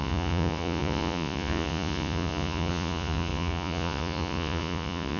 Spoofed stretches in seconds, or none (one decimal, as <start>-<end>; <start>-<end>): 0.0-5.2